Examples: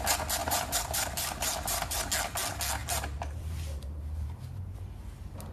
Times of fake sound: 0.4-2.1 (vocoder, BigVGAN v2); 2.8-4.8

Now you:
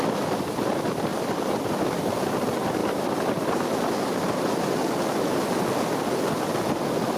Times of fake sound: 1.1-2.2 (vocoder, BigVGAN v2); 2.8-4.8

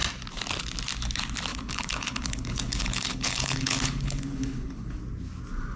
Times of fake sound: 1.5-5.0 (codec, HILCodec)

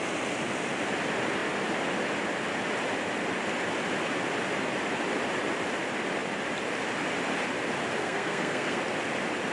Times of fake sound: 8.0-8.8 (codec, SNAC)

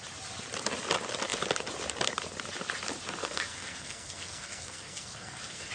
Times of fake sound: 3.2-5.7 (codec, SNAC)

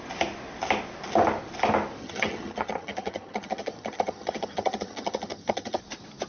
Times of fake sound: 2.0-5.8 (vocoder, HiFi-GAN)